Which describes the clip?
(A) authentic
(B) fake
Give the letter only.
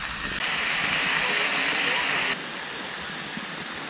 A